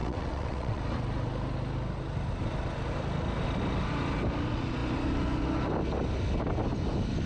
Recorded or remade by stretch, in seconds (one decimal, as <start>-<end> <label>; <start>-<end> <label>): 0.0-0.8 remade; 0.8-7.3 recorded